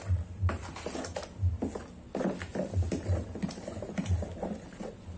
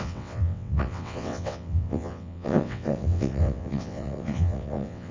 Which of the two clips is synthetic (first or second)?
second